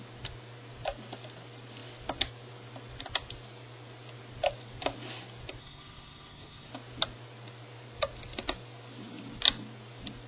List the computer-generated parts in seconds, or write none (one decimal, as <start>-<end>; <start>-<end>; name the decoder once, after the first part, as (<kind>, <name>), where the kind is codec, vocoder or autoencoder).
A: 5.6-6.7 (codec, SNAC)